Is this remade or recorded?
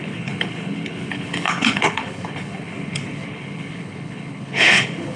remade